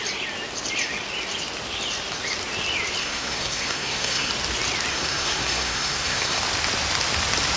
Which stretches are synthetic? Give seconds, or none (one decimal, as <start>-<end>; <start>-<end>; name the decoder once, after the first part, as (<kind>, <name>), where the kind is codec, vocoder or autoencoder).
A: 3.0-4.3 (codec, SNAC); 4.9-6.4